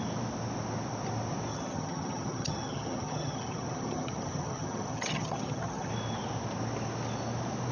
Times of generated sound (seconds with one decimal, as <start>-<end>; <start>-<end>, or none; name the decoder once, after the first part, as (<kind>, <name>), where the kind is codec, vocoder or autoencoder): 1.5-5.9 (vocoder, HiFi-GAN)